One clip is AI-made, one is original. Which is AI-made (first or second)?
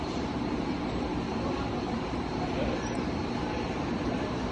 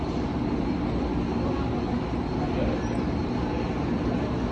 first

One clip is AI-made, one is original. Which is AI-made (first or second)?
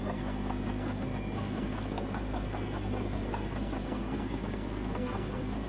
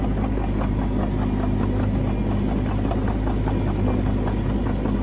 first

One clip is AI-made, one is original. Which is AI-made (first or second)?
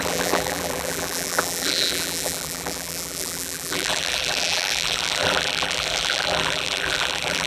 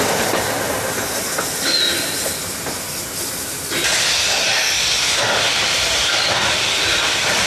first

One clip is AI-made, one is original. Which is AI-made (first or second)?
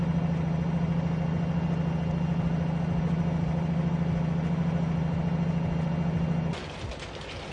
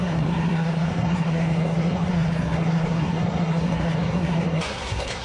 second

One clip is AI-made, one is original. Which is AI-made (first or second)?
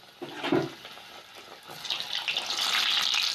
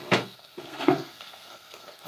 second